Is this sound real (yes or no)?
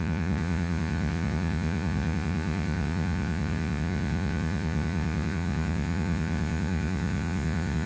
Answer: no